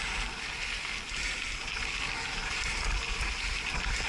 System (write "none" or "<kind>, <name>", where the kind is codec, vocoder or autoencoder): none